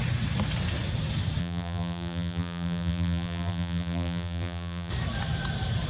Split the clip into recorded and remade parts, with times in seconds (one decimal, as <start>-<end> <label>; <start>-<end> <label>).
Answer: 0.0-1.4 recorded; 1.4-4.9 remade; 4.9-5.9 recorded